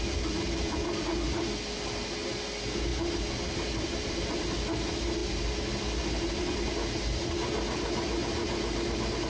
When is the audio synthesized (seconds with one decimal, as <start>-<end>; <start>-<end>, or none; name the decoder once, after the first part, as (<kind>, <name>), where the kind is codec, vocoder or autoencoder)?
none